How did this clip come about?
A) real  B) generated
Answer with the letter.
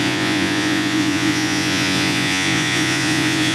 B